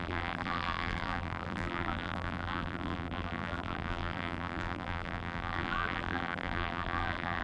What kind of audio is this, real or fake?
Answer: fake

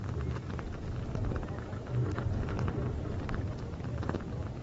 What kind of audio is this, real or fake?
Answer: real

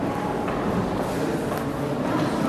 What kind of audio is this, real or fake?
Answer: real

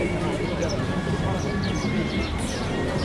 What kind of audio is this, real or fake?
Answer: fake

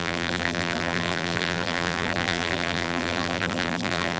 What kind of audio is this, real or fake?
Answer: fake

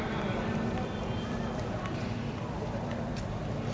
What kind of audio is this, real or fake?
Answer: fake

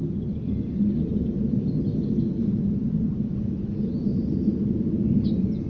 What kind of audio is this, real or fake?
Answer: real